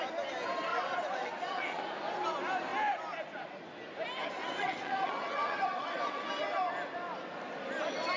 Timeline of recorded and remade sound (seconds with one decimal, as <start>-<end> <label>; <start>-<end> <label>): 0.0-0.7 recorded; 0.7-1.8 remade; 1.8-4.4 recorded; 4.4-6.3 remade; 6.3-8.2 recorded